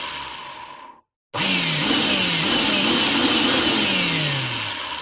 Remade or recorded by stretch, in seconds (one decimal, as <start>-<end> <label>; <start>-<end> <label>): 0.0-5.0 recorded